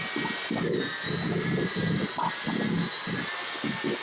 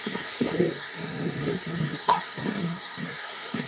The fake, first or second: second